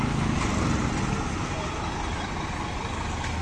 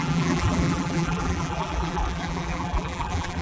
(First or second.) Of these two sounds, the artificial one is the second